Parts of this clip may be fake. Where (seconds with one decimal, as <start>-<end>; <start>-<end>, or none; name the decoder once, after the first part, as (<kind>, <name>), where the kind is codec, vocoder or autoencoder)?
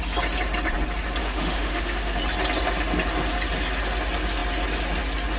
1.2-2.2 (autoencoder, DAC-VAE)